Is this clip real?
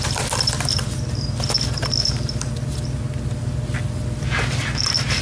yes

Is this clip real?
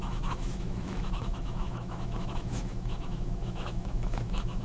no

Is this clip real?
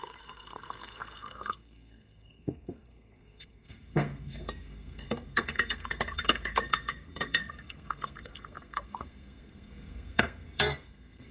no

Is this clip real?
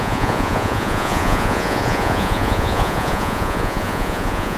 no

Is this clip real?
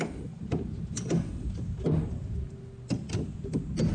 yes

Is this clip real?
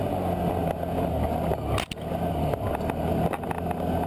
yes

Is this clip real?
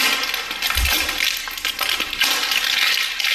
yes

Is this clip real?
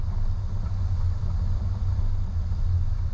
yes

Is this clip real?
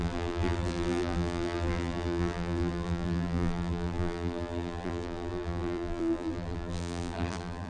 no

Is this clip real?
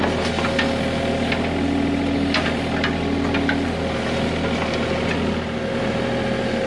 yes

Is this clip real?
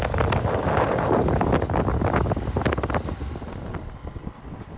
yes